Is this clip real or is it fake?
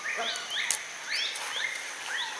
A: real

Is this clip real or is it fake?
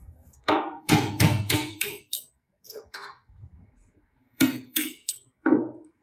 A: fake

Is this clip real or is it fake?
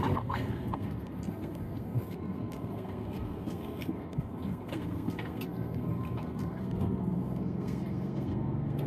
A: fake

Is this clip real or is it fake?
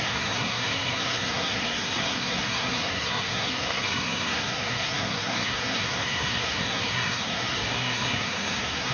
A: fake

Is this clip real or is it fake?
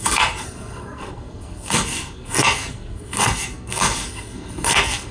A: fake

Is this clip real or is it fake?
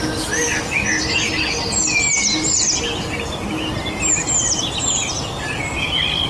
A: real